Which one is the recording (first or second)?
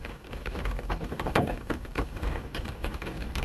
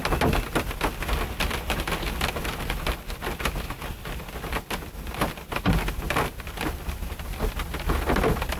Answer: second